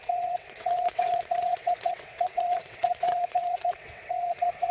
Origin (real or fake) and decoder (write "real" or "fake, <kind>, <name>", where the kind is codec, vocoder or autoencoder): fake, vocoder, WaveNeXt